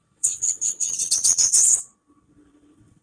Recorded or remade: remade